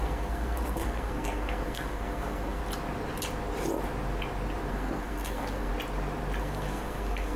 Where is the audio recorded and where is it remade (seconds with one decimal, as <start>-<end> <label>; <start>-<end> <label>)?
0.0-2.6 remade; 2.6-4.7 recorded; 4.7-5.7 remade; 5.7-6.4 recorded; 6.4-7.4 remade